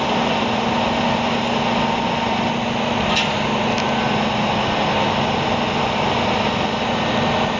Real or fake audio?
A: real